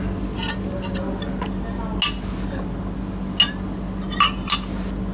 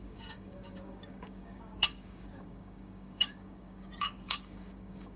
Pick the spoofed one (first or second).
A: second